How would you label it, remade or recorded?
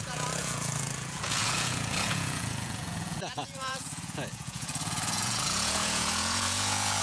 remade